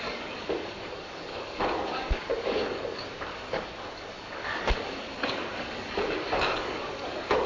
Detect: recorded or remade remade